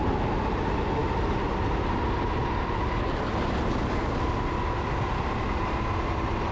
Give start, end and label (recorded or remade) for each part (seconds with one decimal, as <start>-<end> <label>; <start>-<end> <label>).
0.0-6.5 recorded